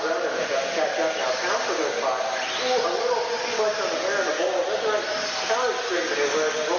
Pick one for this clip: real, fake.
real